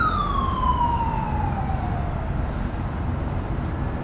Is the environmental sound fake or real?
real